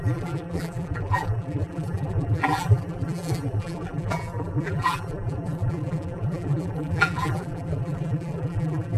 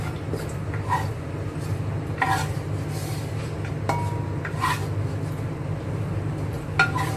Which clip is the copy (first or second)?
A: first